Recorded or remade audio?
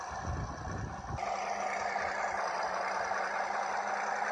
recorded